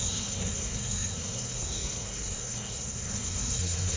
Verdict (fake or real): fake